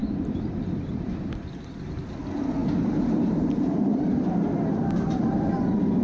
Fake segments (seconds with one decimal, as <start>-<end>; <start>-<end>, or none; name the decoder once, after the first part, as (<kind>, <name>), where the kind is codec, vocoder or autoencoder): 0.0-2.1 (vocoder, BigVGAN v2); 2.6-4.2; 4.8-5.4